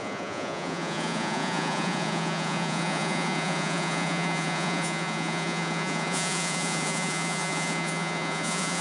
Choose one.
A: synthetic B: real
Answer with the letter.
A